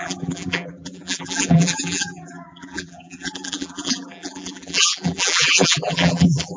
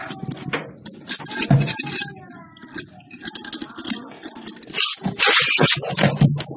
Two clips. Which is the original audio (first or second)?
second